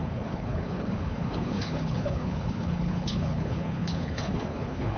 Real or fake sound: fake